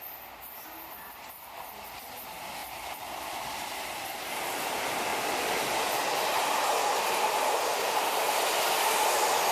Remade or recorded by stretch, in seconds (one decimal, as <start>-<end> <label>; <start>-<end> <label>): 0.0-2.6 recorded; 2.6-4.2 remade; 4.2-5.1 recorded; 5.1-9.0 remade; 9.0-9.5 recorded